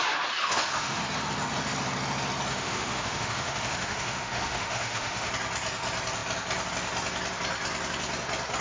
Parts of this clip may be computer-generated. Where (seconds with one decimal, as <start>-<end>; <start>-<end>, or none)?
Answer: 0.4-1.0; 2.5-5.3